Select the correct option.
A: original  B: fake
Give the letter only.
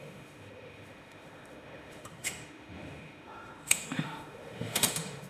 B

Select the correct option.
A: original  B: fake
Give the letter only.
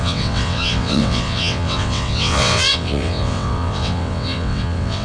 B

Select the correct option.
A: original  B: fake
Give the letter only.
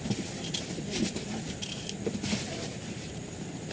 A